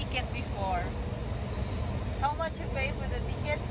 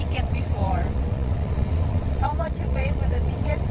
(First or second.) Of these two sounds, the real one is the first